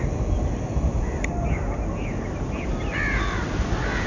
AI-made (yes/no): no